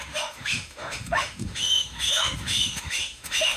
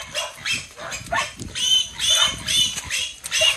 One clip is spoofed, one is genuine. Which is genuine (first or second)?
second